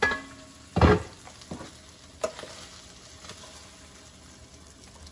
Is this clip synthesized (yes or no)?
no